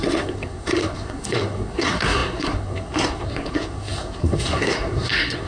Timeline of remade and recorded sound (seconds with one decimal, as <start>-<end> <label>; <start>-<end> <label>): 0.0-5.5 remade